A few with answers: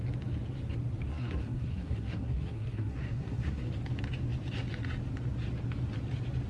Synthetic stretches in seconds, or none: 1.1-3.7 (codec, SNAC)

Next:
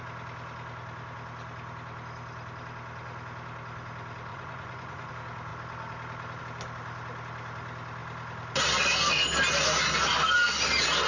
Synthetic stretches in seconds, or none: 4.3-5.1 (vocoder, Vocos)

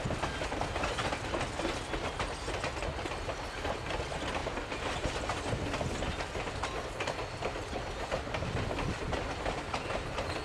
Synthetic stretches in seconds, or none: 4.4-5.2 (vocoder, BigVGAN v2)

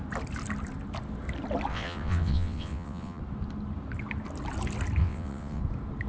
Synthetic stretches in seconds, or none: 1.7-3.2 (vocoder, WaveNeXt); 5.0-5.6